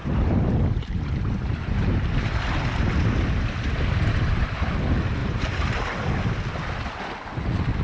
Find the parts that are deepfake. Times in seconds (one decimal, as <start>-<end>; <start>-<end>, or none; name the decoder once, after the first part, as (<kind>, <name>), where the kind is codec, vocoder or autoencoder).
0.0-4.7 (vocoder, BigVGAN v2); 5.2-6.4